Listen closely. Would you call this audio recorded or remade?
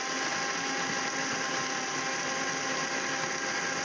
recorded